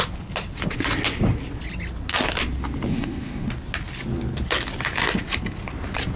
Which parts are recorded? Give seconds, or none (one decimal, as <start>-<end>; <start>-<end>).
0.0-2.9; 3.5-6.2